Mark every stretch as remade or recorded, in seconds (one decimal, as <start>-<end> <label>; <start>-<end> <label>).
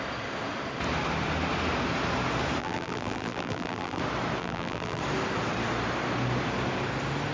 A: 0.0-2.6 recorded; 2.6-4.0 remade; 4.0-4.4 recorded; 4.4-5.0 remade; 5.0-7.3 recorded